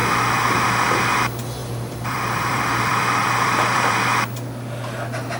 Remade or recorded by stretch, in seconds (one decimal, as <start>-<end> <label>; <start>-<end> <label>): 0.0-1.6 recorded; 1.6-4.2 remade; 4.2-5.4 recorded